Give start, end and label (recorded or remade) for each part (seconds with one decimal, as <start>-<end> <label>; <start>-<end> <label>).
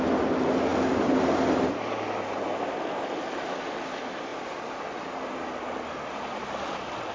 0.0-7.1 recorded